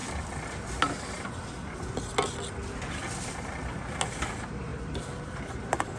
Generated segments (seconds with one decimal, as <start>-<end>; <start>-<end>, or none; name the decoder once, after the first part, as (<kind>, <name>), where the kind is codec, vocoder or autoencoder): none